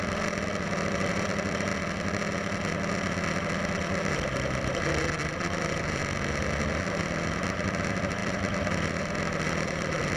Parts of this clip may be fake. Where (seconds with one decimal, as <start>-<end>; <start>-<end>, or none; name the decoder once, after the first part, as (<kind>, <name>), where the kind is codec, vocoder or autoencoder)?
0.0-1.7 (vocoder, BigVGAN v2); 4.1-6.0; 7.0-10.2